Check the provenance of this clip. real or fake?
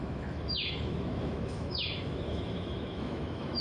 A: fake